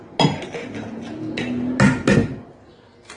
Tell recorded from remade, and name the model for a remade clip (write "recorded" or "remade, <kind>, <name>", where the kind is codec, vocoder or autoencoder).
recorded